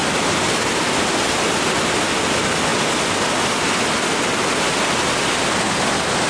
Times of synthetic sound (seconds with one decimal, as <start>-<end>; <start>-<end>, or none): none

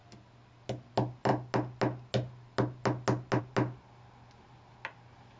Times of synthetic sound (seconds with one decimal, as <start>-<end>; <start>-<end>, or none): none

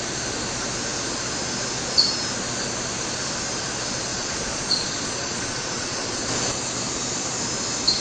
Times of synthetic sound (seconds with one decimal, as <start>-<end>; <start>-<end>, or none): 4.1-6.2

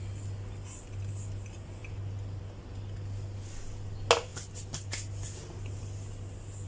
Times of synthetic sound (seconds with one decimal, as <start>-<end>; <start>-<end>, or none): none

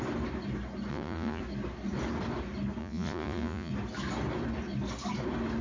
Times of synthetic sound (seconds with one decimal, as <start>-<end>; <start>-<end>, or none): 0.9-1.4; 2.8-3.7

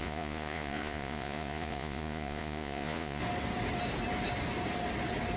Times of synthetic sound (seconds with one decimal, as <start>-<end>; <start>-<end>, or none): 0.0-3.2